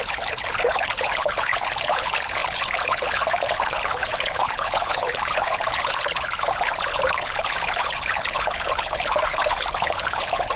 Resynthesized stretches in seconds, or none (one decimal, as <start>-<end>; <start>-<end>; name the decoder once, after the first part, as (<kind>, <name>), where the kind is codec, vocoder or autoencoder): 0.0-10.6 (codec, HILCodec)